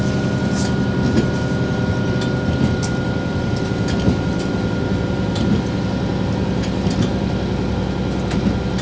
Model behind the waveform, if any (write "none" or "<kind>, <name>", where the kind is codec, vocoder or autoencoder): none